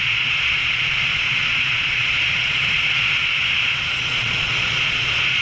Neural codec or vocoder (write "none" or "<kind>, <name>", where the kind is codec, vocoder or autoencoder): vocoder, Vocos